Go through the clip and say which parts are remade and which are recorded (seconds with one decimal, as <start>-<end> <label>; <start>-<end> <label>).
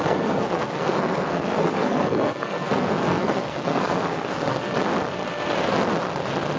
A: 0.0-4.7 remade; 4.7-6.6 recorded